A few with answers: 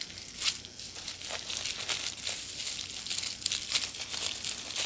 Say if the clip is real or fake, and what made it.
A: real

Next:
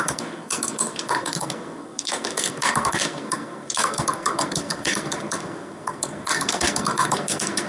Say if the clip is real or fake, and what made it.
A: fake, codec, SNAC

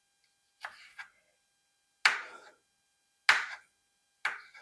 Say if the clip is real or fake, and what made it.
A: real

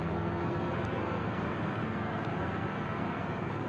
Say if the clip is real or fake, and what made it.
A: fake, codec, SNAC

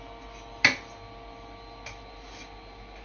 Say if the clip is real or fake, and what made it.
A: real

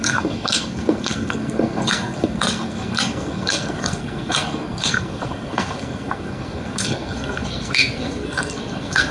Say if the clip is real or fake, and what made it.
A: fake, codec, SNAC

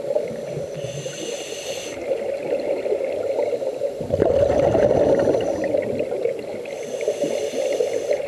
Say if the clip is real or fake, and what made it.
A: real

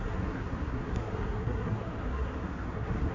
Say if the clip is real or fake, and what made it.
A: fake, codec, SNAC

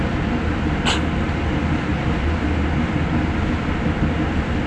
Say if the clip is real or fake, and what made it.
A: real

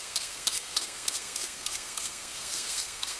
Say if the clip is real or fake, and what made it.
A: fake, codec, SNAC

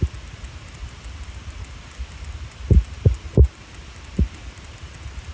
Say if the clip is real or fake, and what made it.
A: real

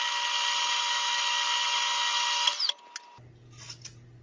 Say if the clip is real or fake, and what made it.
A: real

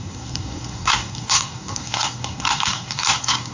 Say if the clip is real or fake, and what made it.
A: fake, codec, SNAC